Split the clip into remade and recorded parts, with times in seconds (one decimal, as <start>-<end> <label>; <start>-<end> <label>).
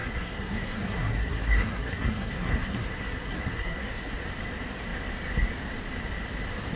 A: 0.0-4.1 remade; 4.1-6.8 recorded